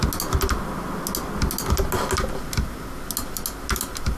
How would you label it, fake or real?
real